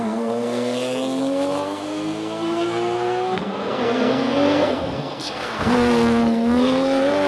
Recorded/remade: remade